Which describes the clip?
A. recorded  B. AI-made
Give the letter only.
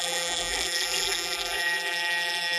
B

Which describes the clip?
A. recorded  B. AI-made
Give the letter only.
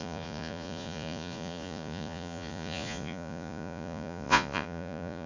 B